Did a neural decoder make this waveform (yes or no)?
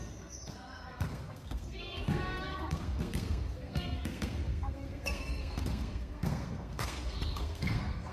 yes